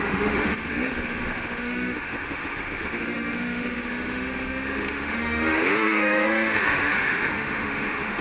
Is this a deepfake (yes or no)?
yes